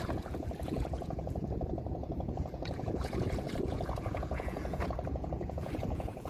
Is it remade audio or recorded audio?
remade